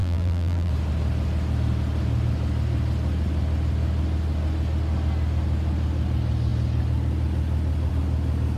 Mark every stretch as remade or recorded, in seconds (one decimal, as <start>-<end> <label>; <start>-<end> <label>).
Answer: 0.0-0.7 remade; 0.7-8.6 recorded